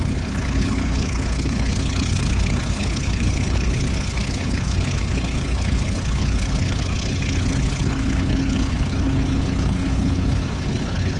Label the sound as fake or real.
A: fake